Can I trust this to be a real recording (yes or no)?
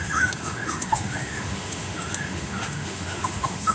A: no